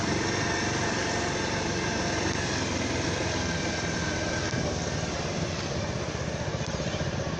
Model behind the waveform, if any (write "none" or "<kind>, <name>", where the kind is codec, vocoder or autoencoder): vocoder, BigVGAN v2